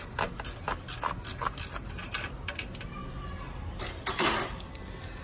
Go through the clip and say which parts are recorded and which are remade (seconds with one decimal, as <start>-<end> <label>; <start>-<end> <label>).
0.0-5.2 recorded